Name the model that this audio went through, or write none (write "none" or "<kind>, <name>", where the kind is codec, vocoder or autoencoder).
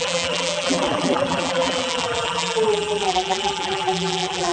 vocoder, BigVGAN v2